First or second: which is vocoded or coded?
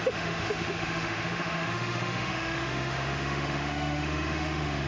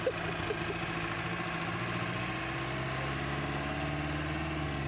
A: first